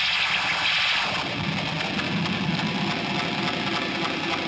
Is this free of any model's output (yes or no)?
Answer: yes